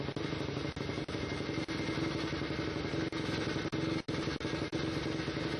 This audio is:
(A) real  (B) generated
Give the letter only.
A